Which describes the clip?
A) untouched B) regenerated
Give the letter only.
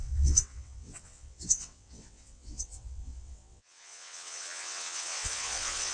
B